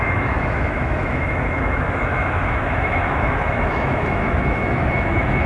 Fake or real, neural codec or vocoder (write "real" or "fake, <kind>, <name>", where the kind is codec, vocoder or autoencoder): fake, autoencoder, DAC-VAE